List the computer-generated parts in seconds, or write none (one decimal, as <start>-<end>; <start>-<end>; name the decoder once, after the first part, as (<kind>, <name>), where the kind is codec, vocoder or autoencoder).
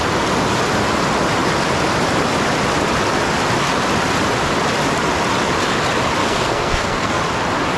6.2-7.2 (codec, SNAC)